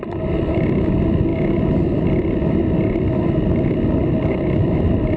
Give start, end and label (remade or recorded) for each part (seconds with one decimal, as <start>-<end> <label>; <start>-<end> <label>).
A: 0.0-5.2 recorded